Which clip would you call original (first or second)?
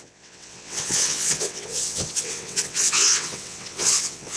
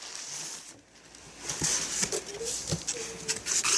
second